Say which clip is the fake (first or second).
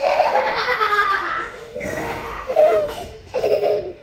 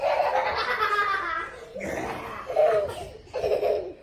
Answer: first